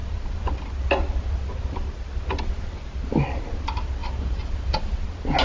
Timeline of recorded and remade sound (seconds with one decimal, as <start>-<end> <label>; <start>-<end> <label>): 0.0-4.0 recorded; 4.0-5.0 remade; 5.0-5.4 recorded